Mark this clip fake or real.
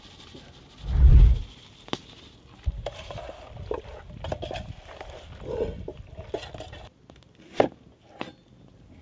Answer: real